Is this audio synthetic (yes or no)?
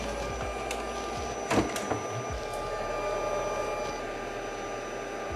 no